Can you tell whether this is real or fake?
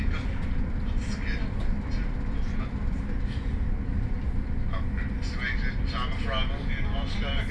fake